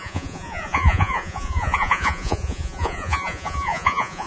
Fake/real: fake